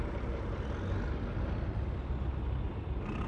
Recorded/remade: recorded